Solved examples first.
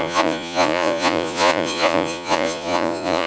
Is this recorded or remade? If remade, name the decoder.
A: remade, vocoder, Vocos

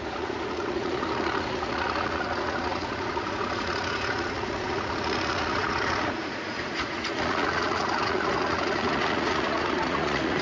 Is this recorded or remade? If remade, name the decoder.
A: remade, vocoder, Vocos